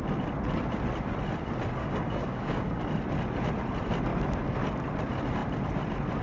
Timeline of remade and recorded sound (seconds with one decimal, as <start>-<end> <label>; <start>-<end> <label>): 0.0-1.8 recorded; 1.8-2.8 remade; 2.8-6.2 recorded